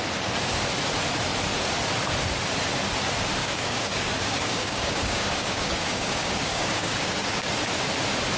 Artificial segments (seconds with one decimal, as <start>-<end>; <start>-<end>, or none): 3.4-7.5